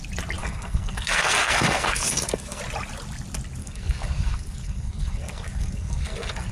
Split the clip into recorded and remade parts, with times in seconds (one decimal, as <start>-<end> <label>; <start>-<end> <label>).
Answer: 0.0-0.4 recorded; 0.4-2.6 remade; 2.6-3.6 recorded; 3.6-6.5 remade